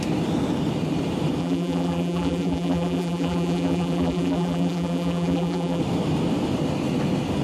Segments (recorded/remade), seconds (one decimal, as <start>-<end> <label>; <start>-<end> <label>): 0.0-1.4 recorded; 1.4-5.8 remade; 5.8-7.4 recorded